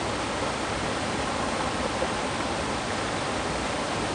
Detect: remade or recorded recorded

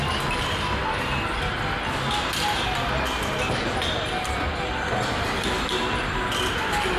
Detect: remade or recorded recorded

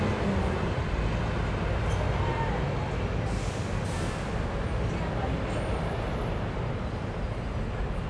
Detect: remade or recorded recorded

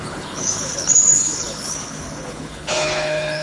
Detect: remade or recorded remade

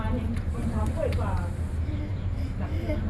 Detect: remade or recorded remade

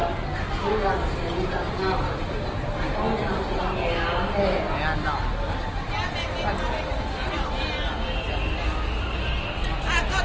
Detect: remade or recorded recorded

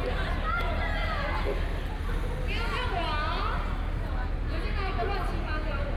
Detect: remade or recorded recorded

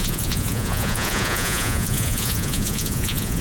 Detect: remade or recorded remade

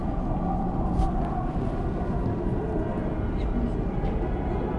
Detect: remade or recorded recorded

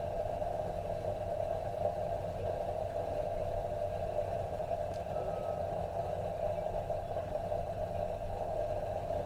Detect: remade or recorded recorded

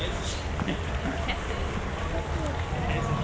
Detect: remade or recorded recorded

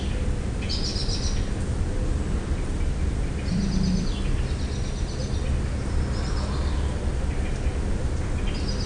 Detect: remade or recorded recorded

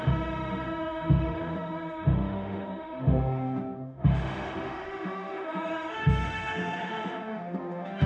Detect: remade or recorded remade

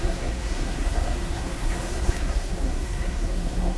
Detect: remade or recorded remade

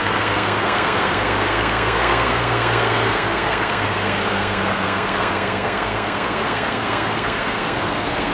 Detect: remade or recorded remade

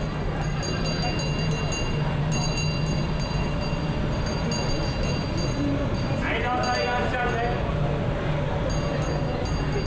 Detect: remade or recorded recorded